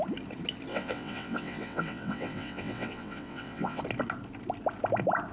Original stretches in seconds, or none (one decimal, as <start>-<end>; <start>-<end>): 0.0-0.7; 3.8-5.3